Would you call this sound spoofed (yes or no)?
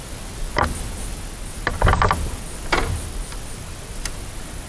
no